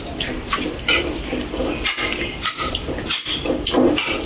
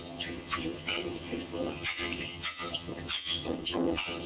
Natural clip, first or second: first